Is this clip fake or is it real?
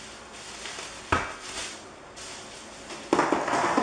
real